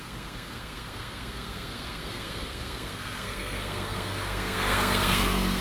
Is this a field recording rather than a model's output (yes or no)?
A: no